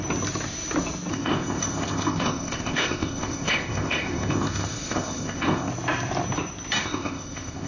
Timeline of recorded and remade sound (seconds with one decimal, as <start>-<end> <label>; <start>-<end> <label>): 0.0-1.1 recorded; 1.1-5.7 remade; 5.7-6.8 recorded; 6.8-7.7 remade